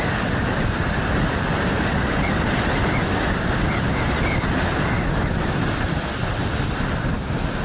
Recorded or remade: recorded